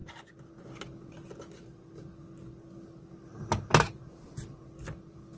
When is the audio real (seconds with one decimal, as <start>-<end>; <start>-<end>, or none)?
0.0-5.4